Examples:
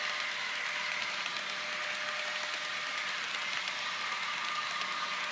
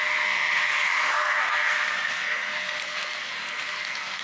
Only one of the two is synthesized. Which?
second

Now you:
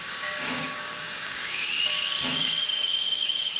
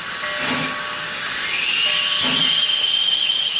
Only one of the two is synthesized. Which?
first